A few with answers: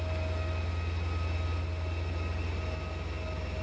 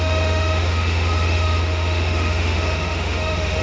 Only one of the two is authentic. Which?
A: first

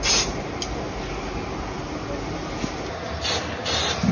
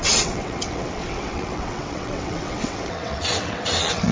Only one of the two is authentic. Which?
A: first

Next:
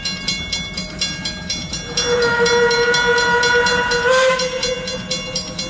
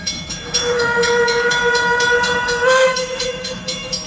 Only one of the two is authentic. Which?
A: first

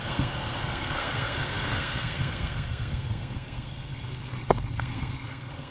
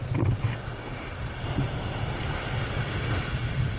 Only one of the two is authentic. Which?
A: second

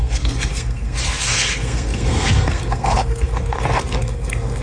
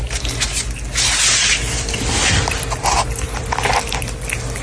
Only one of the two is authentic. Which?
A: second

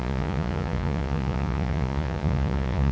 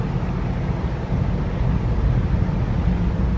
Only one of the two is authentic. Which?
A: second